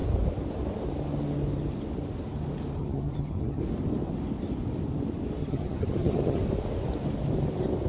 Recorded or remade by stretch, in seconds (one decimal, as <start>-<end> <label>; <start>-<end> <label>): 0.0-2.8 recorded; 2.8-3.6 remade; 3.6-5.4 recorded; 5.4-6.4 remade; 6.4-7.9 recorded